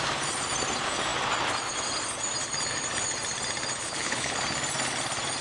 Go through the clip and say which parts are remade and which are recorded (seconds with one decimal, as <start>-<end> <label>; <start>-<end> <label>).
0.0-3.8 recorded; 3.8-4.4 remade; 4.4-5.4 recorded